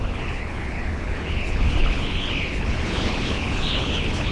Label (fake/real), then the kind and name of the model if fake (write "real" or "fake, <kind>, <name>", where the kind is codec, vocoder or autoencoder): fake, codec, HILCodec